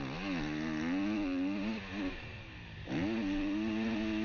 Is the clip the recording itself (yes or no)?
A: yes